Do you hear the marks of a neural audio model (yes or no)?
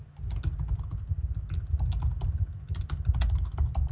no